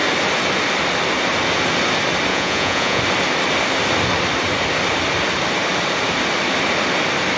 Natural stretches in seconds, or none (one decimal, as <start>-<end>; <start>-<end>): 0.0-2.3; 3.0-7.4